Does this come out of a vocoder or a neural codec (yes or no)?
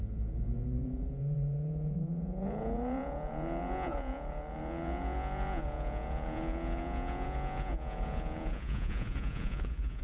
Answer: yes